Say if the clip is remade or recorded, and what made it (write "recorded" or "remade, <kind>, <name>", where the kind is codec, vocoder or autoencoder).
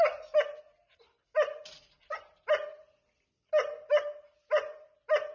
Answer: recorded